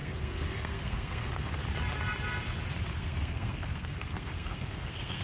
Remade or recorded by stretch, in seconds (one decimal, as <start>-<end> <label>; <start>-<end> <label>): 0.0-1.6 remade; 1.6-2.9 recorded; 2.9-5.2 remade